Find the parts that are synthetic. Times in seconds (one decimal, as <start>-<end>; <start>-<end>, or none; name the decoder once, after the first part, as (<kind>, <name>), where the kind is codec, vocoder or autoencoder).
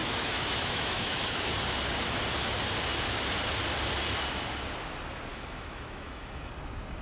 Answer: 0.0-1.5 (autoencoder, DAC-VAE); 5.3-6.5